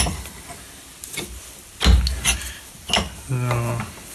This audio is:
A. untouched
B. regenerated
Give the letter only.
A